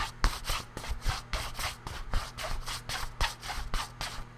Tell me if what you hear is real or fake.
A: real